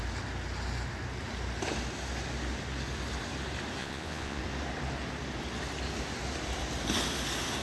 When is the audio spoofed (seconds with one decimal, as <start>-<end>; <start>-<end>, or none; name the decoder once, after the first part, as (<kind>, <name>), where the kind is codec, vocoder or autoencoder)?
3.8-4.4 (vocoder, Vocos)